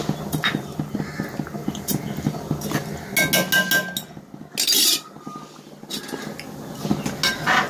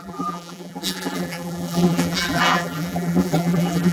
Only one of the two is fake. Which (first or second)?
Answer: second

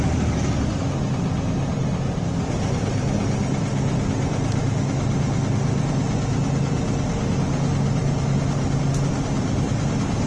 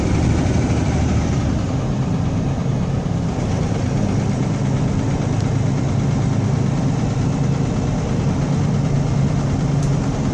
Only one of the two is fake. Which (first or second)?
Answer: second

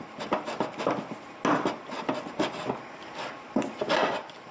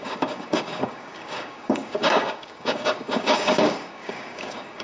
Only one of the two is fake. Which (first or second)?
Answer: second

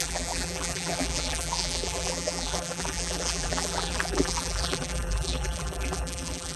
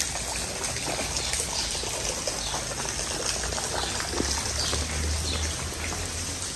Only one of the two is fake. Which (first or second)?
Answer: first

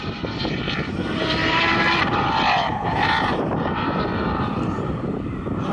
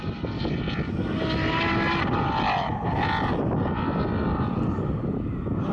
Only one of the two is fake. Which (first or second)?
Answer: first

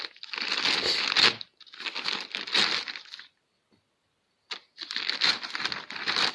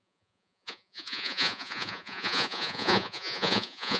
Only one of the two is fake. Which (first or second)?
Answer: second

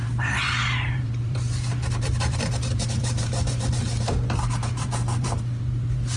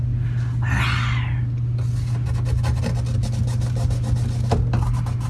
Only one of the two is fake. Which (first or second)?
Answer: first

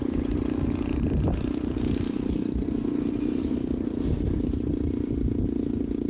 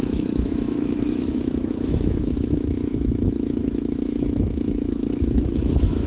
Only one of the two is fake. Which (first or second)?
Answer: second